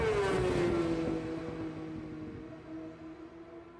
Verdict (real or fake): real